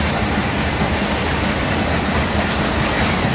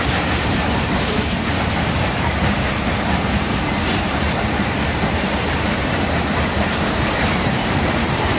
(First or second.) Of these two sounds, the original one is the first